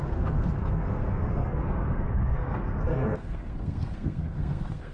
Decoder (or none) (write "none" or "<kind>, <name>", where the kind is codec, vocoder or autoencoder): codec, SNAC